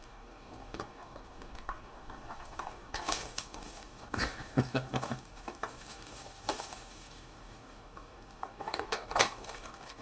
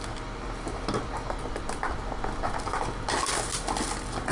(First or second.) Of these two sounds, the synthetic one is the first